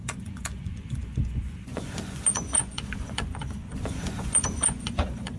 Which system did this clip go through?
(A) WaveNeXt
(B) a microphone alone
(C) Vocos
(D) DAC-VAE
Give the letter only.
C